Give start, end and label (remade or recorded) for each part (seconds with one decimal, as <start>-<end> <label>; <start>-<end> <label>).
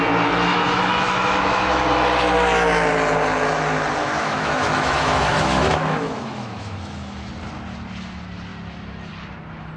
0.0-0.5 recorded; 0.5-1.8 remade; 1.8-4.0 recorded; 4.0-7.3 remade; 7.3-9.8 recorded